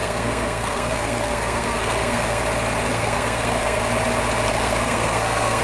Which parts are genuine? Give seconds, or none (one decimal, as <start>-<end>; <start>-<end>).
2.4-2.9; 3.8-4.5